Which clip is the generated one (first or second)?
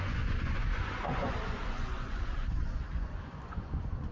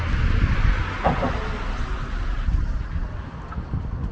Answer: first